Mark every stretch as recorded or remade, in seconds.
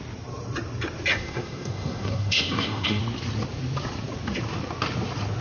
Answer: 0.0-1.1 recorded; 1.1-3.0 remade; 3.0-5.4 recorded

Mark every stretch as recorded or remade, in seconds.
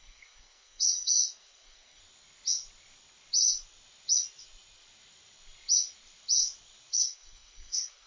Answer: 0.0-2.0 remade; 2.0-6.9 recorded; 6.9-8.1 remade